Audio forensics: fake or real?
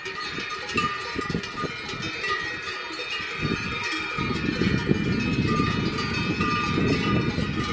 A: real